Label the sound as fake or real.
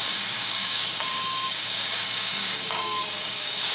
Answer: fake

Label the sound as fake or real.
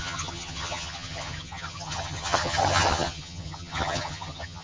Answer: fake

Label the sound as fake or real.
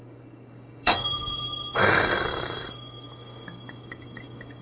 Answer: fake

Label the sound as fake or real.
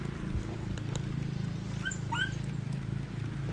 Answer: real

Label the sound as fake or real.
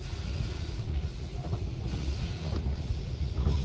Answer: fake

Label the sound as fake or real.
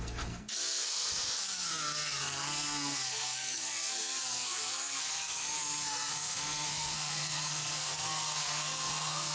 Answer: fake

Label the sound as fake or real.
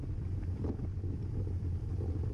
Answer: fake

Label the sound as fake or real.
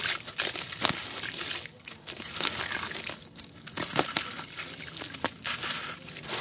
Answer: real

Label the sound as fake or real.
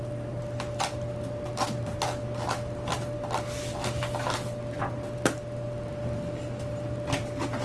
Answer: real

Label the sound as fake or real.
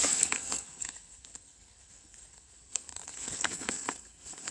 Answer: fake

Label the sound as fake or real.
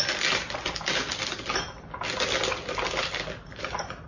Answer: real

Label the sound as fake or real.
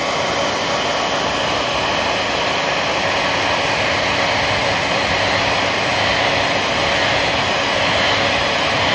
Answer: real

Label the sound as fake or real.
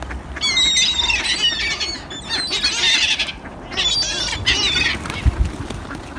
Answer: real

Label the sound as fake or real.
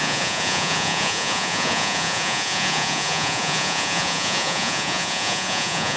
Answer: fake